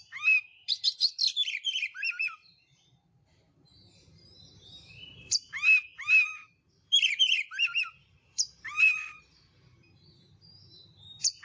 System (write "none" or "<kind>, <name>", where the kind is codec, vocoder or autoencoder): vocoder, BigVGAN v2